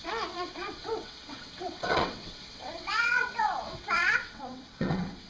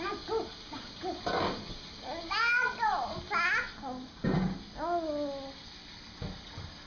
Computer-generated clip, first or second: first